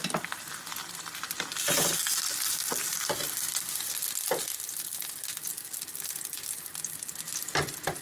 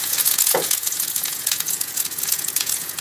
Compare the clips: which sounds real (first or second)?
first